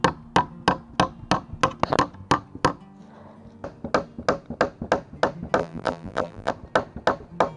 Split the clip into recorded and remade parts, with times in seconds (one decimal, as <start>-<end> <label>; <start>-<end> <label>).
0.0-5.6 recorded; 5.6-6.5 remade; 6.5-7.6 recorded